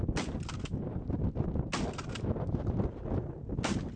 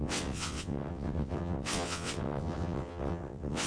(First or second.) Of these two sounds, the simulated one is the second